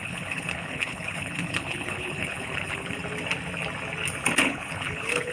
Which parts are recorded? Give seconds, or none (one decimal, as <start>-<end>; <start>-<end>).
3.0-4.4